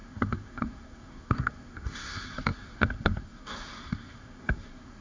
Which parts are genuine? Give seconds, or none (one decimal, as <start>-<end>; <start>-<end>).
none